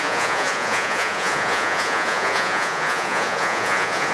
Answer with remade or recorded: remade